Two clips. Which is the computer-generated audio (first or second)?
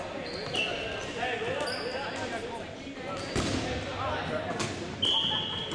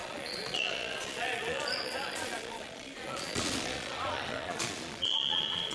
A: second